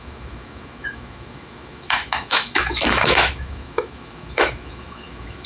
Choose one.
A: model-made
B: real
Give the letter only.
A